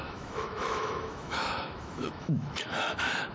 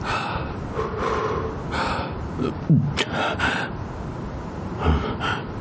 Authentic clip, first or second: second